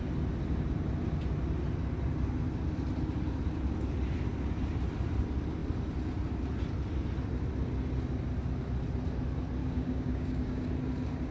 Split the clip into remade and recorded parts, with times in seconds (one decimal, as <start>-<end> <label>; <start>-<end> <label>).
0.0-9.6 recorded; 9.6-10.7 remade; 10.7-11.3 recorded